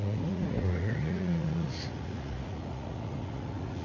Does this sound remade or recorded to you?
remade